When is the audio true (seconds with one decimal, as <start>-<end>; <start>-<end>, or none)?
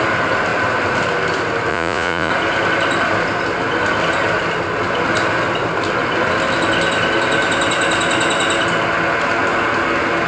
0.0-1.7; 2.3-10.3